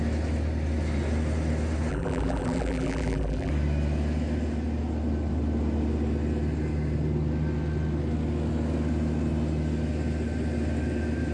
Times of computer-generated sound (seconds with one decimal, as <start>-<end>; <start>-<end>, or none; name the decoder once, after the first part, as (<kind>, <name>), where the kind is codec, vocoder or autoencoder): 1.9-3.5 (vocoder, BigVGAN v2)